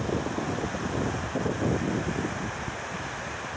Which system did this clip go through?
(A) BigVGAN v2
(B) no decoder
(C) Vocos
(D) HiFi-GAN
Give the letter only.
B